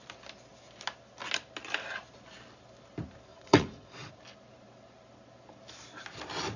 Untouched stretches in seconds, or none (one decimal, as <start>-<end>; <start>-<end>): 0.0-3.3; 4.1-6.6